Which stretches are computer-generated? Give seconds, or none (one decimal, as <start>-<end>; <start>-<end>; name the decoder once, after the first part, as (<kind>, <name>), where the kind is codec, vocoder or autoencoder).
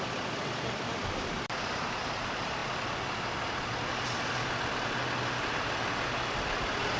0.0-2.6 (vocoder, BigVGAN v2); 5.5-7.0